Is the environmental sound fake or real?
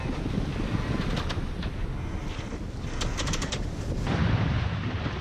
real